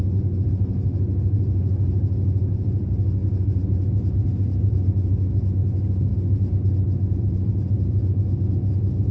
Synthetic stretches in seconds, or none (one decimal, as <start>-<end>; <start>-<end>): none